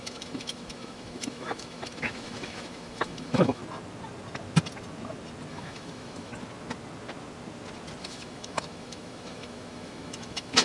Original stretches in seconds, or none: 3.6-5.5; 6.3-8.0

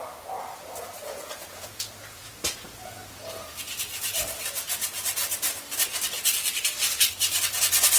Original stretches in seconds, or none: 0.0-1.0; 4.2-8.0

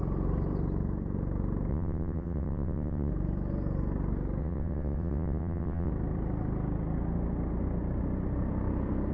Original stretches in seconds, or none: 0.0-1.7; 3.1-4.4; 5.9-9.1

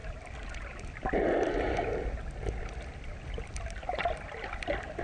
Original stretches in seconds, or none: 0.0-5.0

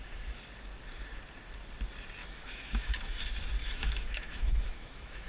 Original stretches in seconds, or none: 0.0-2.2; 3.0-3.6

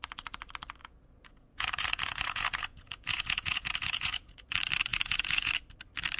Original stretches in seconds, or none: 0.0-0.8; 4.5-4.9; 5.5-6.2

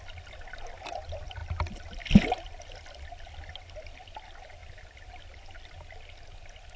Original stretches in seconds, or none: 0.0-6.8